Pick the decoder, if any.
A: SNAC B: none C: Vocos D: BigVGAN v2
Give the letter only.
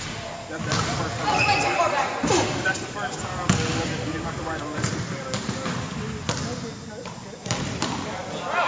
B